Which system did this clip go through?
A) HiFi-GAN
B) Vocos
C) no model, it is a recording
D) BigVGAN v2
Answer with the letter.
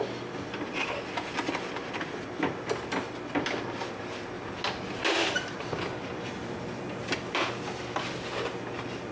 C